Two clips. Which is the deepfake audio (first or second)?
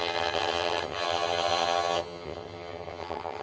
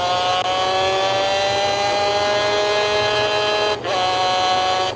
first